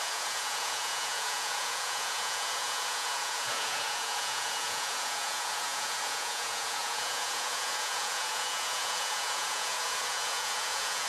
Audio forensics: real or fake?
fake